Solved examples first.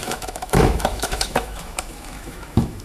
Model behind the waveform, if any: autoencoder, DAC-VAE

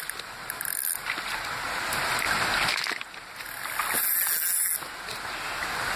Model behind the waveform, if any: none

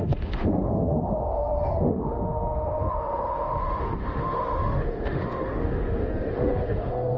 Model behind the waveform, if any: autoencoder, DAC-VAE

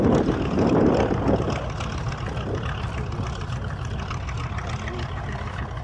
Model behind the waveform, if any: none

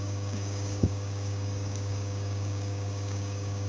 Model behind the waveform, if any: codec, DAC